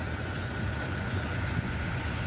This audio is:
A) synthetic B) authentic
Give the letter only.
A